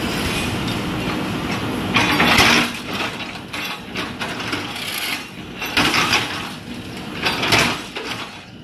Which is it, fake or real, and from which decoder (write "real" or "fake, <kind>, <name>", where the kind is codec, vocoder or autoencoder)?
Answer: real